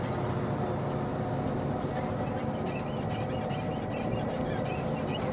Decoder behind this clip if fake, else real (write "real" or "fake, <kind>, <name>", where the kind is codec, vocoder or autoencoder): real